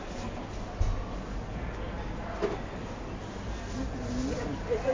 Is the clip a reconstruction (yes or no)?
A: no